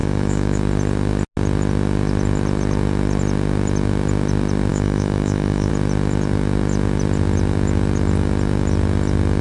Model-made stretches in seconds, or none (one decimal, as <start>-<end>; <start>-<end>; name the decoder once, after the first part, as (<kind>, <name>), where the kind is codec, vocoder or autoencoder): 0.0-0.6 (autoencoder, DAC-VAE); 4.7-5.7